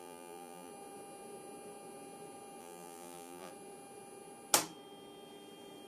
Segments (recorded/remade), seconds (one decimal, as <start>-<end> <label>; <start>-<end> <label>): 0.0-0.7 remade; 0.7-2.6 recorded; 2.6-3.5 remade; 3.5-5.9 recorded